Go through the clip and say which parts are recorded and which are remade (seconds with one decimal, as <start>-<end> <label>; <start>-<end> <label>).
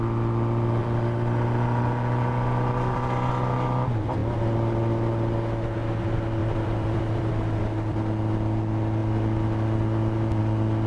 0.0-0.8 recorded; 0.8-3.3 remade; 3.3-6.4 recorded; 6.4-7.3 remade; 7.3-10.9 recorded